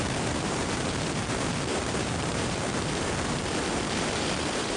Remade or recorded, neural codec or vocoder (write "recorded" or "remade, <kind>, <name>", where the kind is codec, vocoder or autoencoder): remade, vocoder, BigVGAN v2